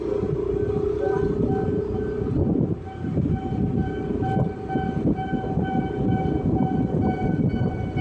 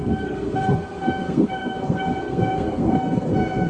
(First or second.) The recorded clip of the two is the first